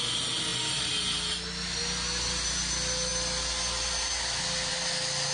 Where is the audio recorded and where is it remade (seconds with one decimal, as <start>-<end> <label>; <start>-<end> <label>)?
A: 0.0-5.3 recorded